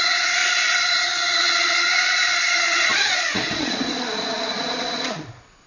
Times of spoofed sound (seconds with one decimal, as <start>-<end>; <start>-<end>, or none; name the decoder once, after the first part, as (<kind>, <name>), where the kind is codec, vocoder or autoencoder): 0.0-5.7 (vocoder, Vocos)